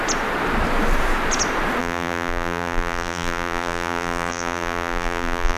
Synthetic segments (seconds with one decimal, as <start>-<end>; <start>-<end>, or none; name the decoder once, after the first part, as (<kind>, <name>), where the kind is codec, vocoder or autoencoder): 1.8-5.6 (vocoder, BigVGAN v2)